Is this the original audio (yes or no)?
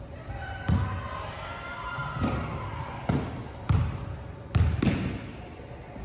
yes